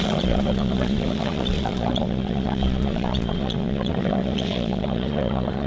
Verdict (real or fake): fake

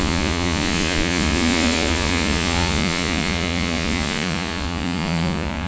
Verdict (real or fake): fake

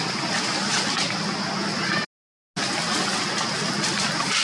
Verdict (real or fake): real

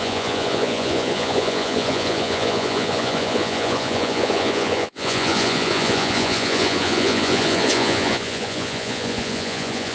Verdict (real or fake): fake